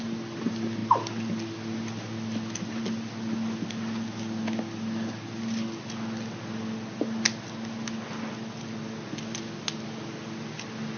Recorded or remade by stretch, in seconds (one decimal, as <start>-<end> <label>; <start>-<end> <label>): 0.0-11.0 recorded